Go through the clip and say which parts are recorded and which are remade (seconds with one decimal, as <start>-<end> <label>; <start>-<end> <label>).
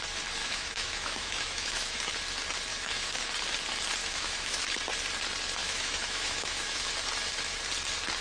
0.0-0.4 recorded; 0.4-2.0 remade; 2.0-2.7 recorded; 2.7-3.3 remade; 3.3-4.0 recorded; 4.0-4.6 remade; 4.6-5.6 recorded; 5.6-6.9 remade; 6.9-8.2 recorded